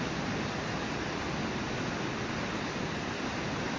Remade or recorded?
recorded